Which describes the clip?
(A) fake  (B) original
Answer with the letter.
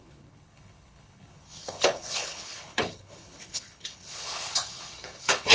A